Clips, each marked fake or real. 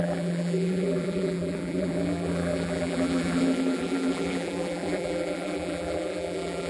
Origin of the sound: fake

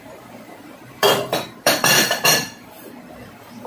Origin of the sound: fake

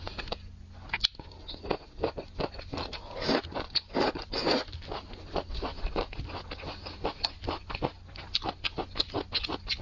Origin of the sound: real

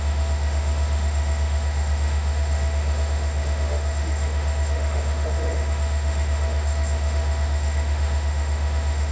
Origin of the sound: fake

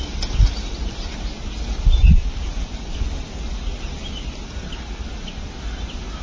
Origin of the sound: real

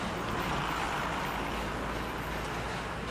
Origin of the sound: real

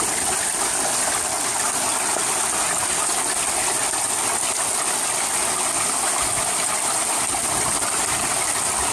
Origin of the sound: real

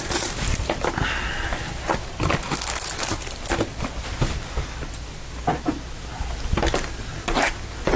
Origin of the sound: real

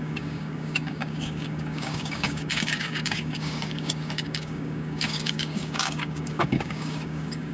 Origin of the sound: fake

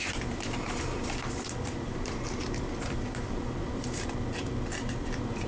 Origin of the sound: fake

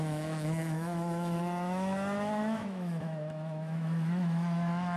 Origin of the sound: fake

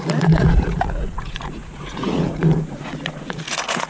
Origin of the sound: fake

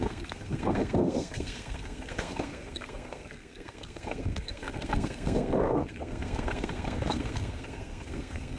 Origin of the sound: fake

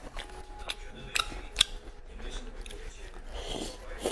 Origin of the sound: real